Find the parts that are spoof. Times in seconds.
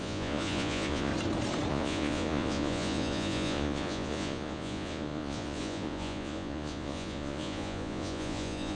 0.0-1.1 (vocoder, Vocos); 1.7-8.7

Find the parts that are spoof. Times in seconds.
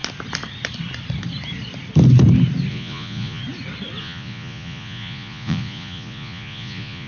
2.7-3.4 (vocoder, Vocos); 4.0-7.1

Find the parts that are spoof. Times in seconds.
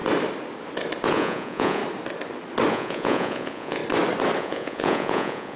1.1-1.8 (vocoder, Vocos); 2.7-3.8; 4.4-5.6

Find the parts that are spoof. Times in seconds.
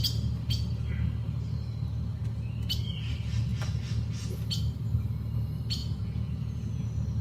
5.8-6.8 (vocoder, Vocos)